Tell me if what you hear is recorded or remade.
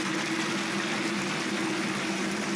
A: recorded